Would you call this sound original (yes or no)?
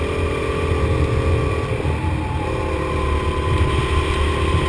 yes